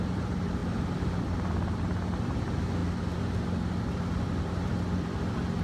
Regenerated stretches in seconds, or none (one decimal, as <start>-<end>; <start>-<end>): 0.0-0.6; 1.2-2.8; 4.4-5.6